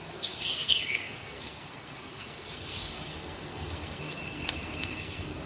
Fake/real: fake